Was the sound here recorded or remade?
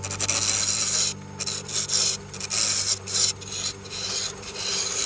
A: recorded